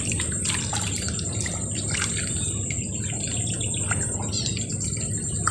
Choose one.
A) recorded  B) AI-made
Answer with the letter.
A